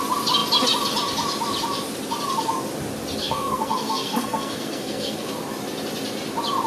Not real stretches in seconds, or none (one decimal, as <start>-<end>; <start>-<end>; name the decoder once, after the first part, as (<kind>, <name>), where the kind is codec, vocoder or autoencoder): 3.2-5.3 (codec, SNAC)